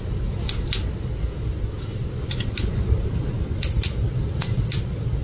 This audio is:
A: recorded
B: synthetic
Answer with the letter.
A